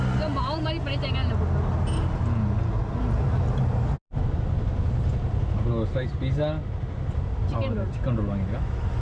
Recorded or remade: recorded